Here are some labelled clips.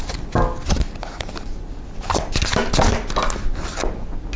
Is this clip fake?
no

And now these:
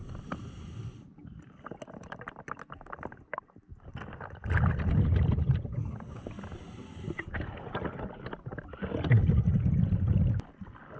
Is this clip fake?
no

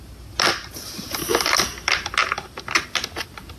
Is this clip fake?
no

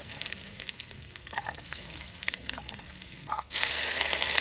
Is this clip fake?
yes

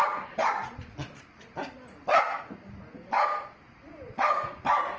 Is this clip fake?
no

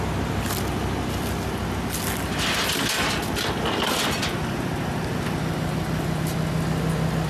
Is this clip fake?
no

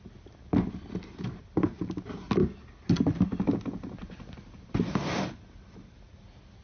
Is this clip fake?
no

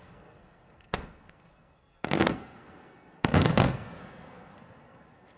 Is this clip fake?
yes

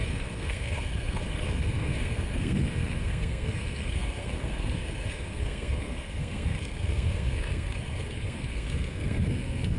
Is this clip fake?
yes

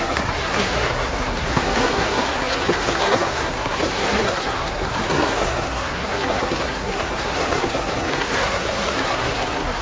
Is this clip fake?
yes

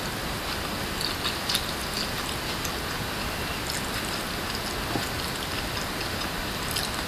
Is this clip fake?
no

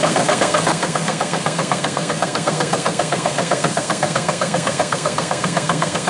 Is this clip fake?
yes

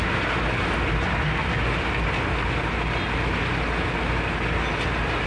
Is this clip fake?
no